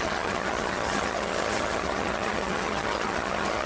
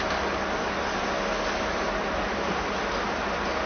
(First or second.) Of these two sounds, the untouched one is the second